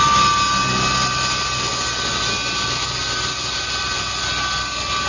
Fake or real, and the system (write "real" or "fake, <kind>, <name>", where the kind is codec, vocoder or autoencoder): real